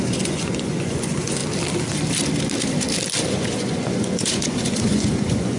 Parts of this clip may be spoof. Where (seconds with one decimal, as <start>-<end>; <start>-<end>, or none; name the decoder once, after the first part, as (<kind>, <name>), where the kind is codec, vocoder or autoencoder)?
0.0-1.4 (vocoder, Vocos); 3.3-5.6